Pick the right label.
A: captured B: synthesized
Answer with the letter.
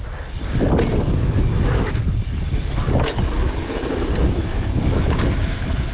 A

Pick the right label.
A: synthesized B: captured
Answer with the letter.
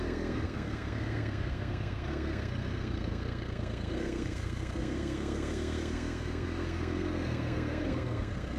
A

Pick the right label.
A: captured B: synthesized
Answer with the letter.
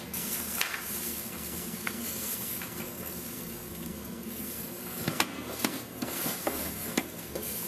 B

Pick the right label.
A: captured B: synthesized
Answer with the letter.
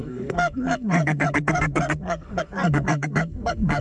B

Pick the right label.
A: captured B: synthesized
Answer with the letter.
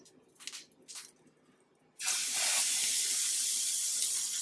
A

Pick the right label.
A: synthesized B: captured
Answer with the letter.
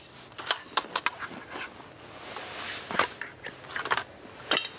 B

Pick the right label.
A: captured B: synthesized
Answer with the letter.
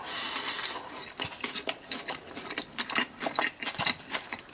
A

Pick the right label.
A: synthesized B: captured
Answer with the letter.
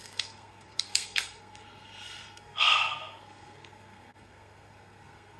A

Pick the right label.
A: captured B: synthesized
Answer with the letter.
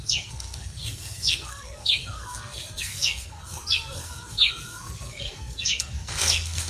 B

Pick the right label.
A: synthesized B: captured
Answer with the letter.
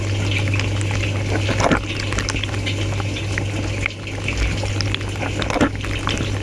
B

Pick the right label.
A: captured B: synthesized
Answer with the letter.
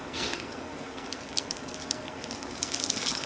B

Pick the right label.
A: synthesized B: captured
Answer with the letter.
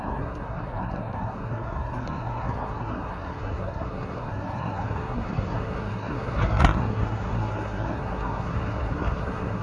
A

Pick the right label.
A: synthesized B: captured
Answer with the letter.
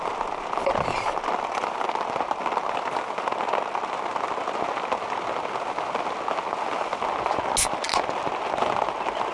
B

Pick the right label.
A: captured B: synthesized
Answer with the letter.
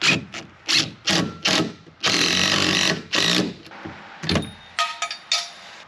A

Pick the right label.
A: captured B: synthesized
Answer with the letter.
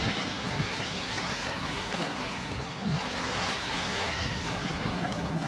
B